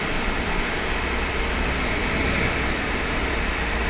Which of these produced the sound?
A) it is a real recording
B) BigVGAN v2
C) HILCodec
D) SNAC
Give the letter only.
B